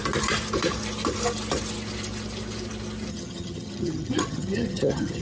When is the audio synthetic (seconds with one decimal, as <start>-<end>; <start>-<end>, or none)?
3.1-5.2